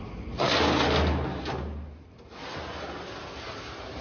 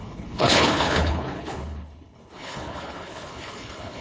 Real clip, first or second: first